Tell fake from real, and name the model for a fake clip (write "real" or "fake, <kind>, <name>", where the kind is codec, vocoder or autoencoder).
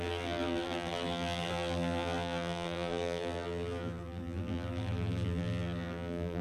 fake, vocoder, BigVGAN v2